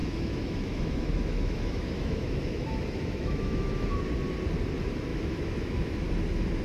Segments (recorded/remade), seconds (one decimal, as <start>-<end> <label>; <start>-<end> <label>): 0.0-4.0 remade; 4.0-5.1 recorded; 5.1-6.1 remade; 6.1-6.6 recorded